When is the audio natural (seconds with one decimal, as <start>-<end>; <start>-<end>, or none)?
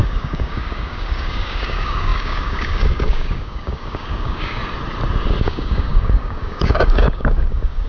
4.6-5.4